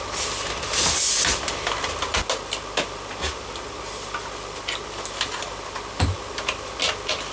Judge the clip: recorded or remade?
recorded